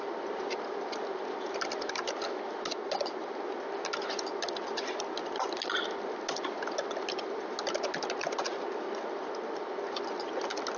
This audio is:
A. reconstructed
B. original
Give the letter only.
B